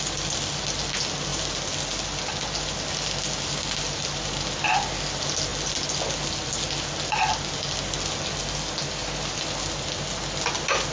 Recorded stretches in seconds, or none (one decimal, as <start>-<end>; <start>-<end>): 0.0-9.0; 10.0-10.9